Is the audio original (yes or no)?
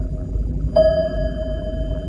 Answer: no